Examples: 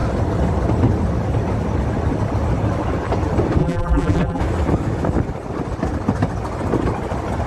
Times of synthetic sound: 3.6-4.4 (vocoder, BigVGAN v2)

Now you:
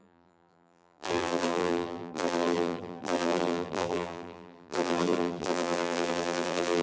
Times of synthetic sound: 0.0-6.8 (vocoder, BigVGAN v2)

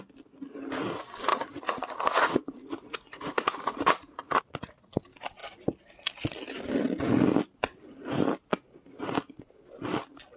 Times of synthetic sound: 1.3-4.9 (vocoder, Vocos)